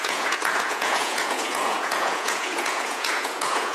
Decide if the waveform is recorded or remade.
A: remade